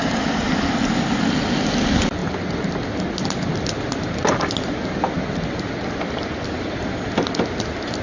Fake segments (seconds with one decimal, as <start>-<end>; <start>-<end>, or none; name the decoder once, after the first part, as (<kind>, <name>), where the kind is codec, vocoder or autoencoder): none

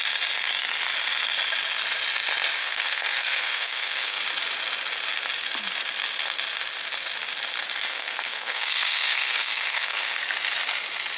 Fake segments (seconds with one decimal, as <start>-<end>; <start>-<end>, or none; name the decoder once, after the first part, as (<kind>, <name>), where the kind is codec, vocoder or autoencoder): 2.6-4.2 (codec, SNAC); 7.9-10.2

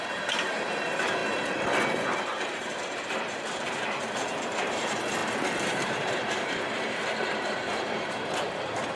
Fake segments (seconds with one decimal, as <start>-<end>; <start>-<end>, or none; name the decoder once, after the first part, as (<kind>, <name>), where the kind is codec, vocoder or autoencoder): 0.0-1.2 (vocoder, BigVGAN v2); 2.2-9.0

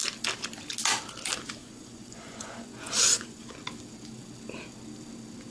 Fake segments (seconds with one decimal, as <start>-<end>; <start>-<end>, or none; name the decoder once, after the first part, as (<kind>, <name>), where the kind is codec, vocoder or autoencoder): 1.6-3.5 (vocoder, Vocos)

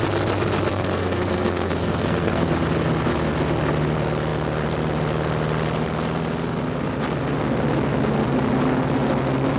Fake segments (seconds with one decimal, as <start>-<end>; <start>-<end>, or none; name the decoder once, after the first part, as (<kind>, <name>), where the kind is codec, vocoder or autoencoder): 0.7-2.5 (codec, SNAC)